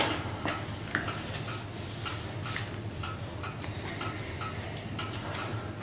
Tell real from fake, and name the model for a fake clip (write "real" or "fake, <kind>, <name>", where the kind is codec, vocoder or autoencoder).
real